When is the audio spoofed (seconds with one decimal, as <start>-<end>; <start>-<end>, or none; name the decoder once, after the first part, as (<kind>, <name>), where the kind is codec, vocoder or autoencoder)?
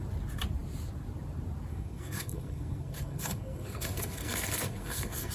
1.7-5.3 (codec, SNAC)